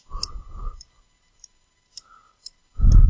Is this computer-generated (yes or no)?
no